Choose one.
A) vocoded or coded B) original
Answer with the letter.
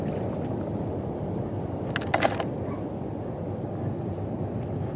B